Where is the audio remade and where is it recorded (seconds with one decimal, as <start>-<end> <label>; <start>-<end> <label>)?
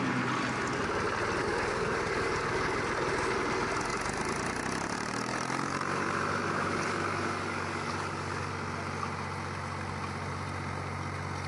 0.0-1.4 recorded; 1.4-2.8 remade; 2.8-5.3 recorded; 5.3-8.5 remade; 8.5-11.5 recorded